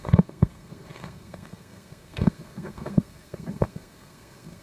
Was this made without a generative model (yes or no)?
no